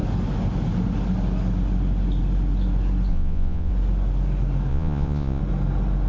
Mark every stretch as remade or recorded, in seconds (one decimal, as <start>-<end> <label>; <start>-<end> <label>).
0.0-3.1 recorded; 3.1-3.7 remade; 3.7-4.7 recorded; 4.7-5.4 remade; 5.4-6.1 recorded